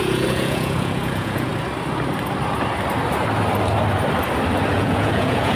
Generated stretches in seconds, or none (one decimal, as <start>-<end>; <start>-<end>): 0.0-1.5; 4.7-5.6